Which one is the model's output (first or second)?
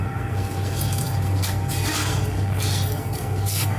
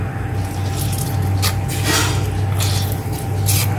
first